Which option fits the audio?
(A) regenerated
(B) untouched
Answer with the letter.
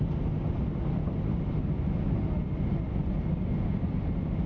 B